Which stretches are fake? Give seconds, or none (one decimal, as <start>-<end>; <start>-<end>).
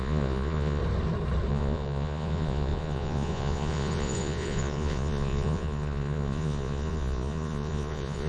0.0-0.8; 1.5-8.3